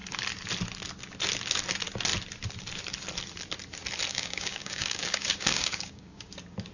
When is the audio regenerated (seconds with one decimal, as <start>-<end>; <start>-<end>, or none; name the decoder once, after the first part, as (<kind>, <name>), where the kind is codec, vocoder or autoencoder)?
4.1-6.3 (codec, DAC)